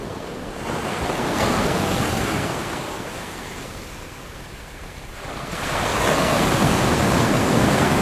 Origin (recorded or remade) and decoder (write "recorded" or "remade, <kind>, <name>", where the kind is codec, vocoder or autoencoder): remade, codec, SNAC